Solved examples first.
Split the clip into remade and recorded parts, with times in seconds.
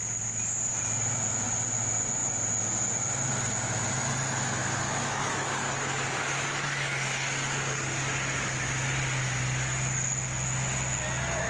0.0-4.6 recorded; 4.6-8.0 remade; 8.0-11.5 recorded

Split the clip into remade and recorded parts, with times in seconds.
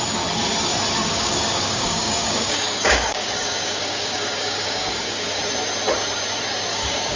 0.0-1.1 recorded; 1.1-5.4 remade; 5.4-6.7 recorded; 6.7-7.2 remade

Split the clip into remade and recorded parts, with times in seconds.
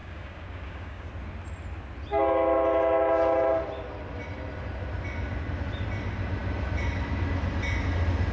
0.0-1.1 remade; 1.1-8.3 recorded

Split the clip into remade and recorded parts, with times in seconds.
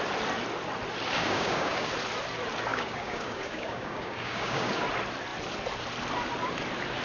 0.0-1.2 recorded; 1.2-1.9 remade; 1.9-2.7 recorded; 2.7-4.8 remade; 4.8-7.0 recorded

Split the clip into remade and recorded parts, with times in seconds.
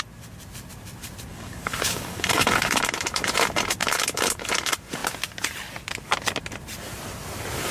0.0-1.3 recorded; 1.3-2.8 remade; 2.8-7.7 recorded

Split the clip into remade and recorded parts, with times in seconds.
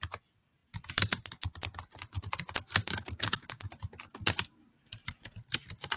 0.0-2.8 recorded; 2.8-3.6 remade; 3.6-6.0 recorded